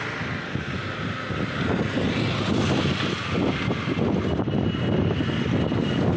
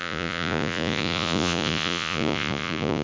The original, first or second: first